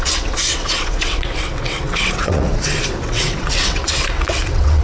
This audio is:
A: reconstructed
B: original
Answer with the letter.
A